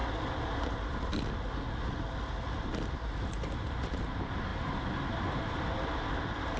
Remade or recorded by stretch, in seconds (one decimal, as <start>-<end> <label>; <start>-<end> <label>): 0.0-6.6 recorded